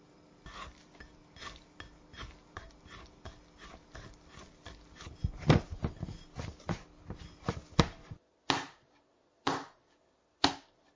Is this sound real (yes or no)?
yes